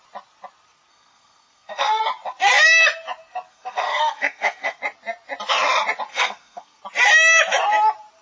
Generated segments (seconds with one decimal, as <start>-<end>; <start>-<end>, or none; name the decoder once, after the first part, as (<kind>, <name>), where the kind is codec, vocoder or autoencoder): 0.9-2.0 (codec, SNAC); 3.5-4.8; 6.1-6.8